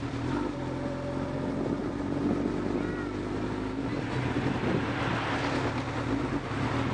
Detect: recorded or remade recorded